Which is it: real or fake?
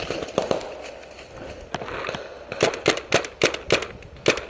real